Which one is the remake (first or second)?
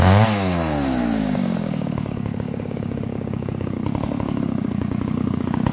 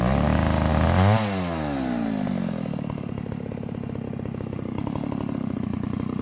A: first